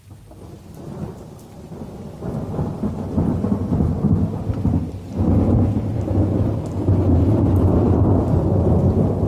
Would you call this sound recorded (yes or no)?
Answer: yes